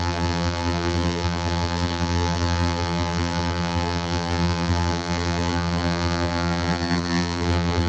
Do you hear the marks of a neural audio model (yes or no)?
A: yes